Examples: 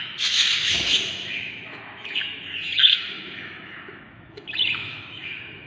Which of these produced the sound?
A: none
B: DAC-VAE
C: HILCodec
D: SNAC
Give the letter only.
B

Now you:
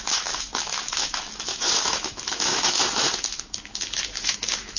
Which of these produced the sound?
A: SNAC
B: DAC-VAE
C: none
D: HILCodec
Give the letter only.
B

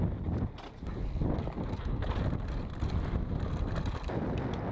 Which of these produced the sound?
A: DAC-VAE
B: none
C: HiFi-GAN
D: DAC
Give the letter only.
B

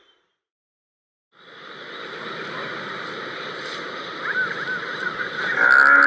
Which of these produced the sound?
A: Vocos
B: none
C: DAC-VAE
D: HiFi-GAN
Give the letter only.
B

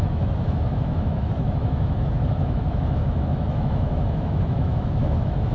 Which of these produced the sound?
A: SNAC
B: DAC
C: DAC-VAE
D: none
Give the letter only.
C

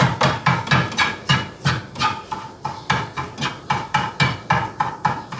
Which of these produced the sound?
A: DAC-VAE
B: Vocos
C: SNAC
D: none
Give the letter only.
D